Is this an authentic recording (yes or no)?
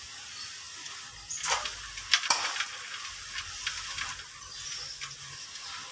yes